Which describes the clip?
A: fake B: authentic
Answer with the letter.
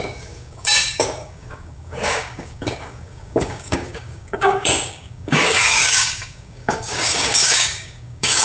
A